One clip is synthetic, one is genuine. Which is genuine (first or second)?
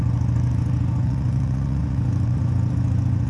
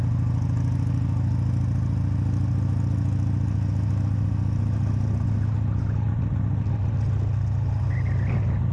second